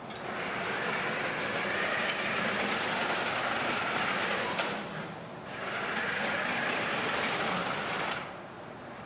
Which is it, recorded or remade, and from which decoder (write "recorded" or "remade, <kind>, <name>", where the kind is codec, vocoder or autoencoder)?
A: recorded